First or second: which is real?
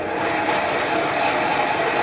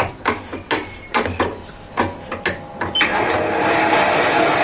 second